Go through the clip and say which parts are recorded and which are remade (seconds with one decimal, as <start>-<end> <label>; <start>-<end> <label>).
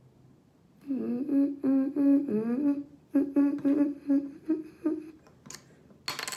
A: 0.0-6.4 recorded